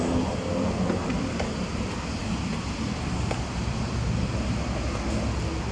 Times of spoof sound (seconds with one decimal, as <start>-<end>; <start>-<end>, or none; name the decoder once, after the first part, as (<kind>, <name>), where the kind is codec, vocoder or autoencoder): none